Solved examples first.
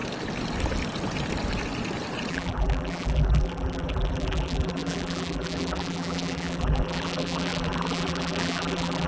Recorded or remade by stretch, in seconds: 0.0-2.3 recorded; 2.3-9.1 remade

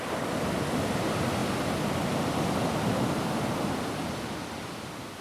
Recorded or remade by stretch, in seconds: 0.0-5.2 recorded

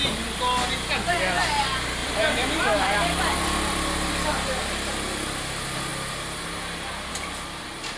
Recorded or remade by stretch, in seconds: 0.0-2.0 recorded; 2.0-4.6 remade; 4.6-8.0 recorded

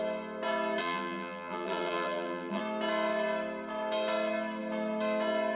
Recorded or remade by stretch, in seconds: 0.0-0.8 recorded; 0.8-2.6 remade; 2.6-5.5 recorded

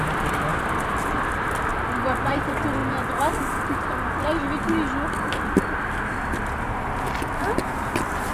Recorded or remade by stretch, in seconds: 0.0-0.5 recorded; 0.5-1.7 remade; 1.7-8.3 recorded

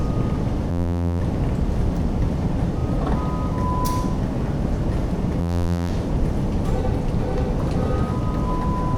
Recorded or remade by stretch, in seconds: 0.0-0.7 recorded; 0.7-1.2 remade; 1.2-5.4 recorded; 5.4-5.9 remade; 5.9-9.0 recorded

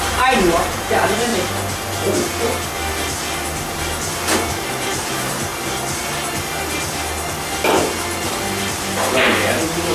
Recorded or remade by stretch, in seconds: 0.0-1.3 remade; 1.3-4.7 recorded; 4.7-5.5 remade; 5.5-8.9 recorded; 8.9-9.9 remade

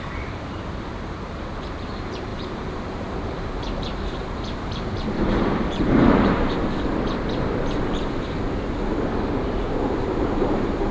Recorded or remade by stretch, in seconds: 0.0-6.6 remade; 6.6-9.8 recorded; 9.8-10.9 remade